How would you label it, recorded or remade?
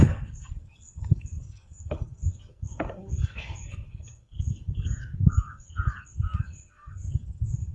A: remade